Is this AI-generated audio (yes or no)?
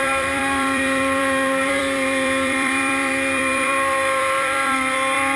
yes